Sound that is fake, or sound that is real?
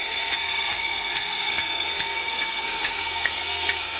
fake